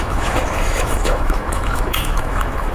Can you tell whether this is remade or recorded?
remade